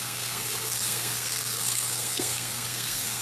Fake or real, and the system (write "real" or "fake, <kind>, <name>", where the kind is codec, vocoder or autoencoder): fake, codec, SNAC